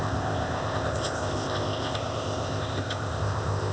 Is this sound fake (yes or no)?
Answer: yes